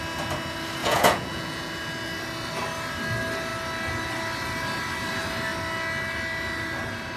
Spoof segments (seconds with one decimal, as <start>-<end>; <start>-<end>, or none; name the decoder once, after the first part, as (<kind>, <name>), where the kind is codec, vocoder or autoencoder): 0.8-1.7 (vocoder, Vocos)